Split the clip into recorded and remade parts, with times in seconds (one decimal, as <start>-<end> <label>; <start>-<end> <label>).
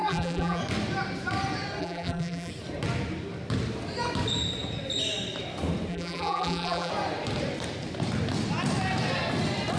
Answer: 0.0-0.6 remade; 0.6-1.8 recorded; 1.8-2.5 remade; 2.5-5.9 recorded; 5.9-6.9 remade; 6.9-9.8 recorded